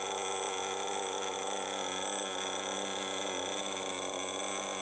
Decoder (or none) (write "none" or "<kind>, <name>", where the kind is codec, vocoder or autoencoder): none